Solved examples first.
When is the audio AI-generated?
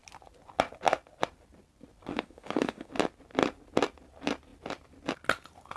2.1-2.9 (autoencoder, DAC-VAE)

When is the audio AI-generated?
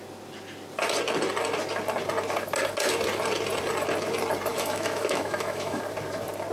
4.5-5.8 (autoencoder, DAC-VAE)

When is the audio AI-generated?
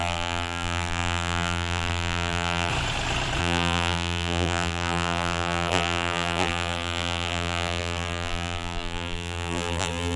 0.0-2.7 (vocoder, BigVGAN v2); 3.4-10.2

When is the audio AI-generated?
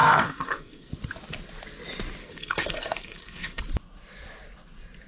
0.0-0.9 (codec, SNAC); 2.2-3.6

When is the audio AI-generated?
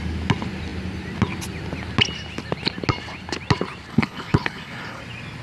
3.9-5.0 (codec, HILCodec)